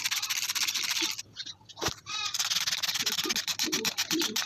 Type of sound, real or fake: real